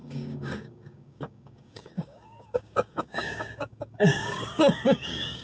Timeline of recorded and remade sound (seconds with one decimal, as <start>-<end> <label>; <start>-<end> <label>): 0.0-5.4 remade